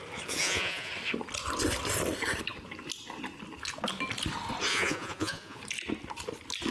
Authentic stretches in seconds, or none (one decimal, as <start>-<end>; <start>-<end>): 0.0-0.4; 0.9-4.7; 5.6-6.7